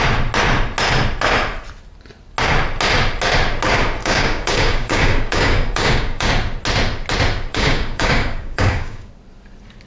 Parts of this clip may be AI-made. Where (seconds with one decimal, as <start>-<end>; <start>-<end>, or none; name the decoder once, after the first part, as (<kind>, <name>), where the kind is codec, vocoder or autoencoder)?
4.0-6.3 (codec, DAC); 7.5-9.1